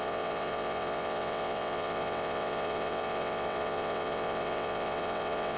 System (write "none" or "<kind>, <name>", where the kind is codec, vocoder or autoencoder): vocoder, WaveNeXt